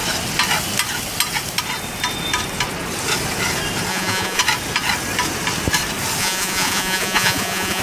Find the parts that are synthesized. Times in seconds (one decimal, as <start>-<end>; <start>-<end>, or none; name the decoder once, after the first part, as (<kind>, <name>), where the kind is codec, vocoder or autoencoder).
3.9-4.4 (vocoder, Vocos); 6.2-7.8